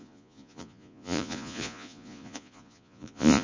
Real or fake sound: fake